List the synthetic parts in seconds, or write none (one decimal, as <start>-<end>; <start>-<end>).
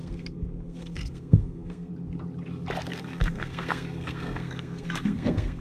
0.0-1.9; 2.9-5.6